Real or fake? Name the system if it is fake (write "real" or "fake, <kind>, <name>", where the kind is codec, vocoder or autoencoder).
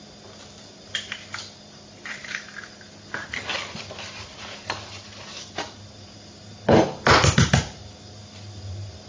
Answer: real